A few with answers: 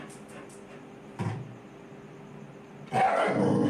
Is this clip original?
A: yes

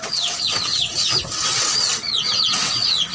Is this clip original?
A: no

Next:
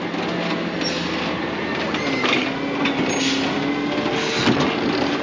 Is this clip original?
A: yes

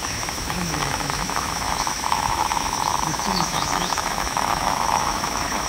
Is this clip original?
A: no